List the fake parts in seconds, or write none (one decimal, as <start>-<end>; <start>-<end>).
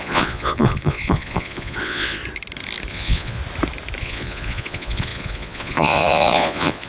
0.0-2.2; 2.9-3.4; 4.0-6.9